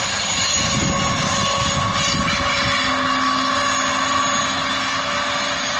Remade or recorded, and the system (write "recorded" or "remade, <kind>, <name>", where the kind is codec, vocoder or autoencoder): recorded